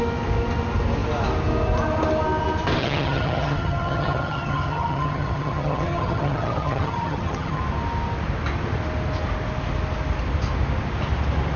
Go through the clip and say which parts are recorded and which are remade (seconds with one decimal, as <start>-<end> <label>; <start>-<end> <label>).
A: 0.0-2.8 recorded; 2.8-7.6 remade; 7.6-11.6 recorded